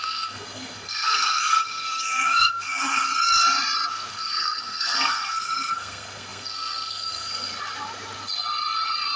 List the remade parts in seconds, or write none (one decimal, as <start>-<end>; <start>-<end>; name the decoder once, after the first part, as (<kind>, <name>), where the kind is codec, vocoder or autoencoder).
0.0-3.1 (codec, SNAC); 4.1-7.5